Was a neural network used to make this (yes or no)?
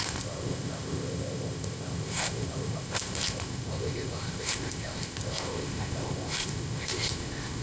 yes